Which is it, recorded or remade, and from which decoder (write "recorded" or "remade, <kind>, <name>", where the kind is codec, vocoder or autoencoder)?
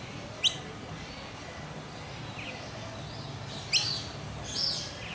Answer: recorded